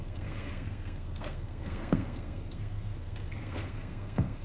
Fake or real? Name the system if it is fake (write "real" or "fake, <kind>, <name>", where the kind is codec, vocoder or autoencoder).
fake, codec, SNAC